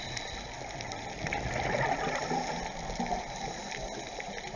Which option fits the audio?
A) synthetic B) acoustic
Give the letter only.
B